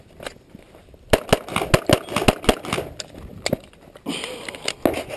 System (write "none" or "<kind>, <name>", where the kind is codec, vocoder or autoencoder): none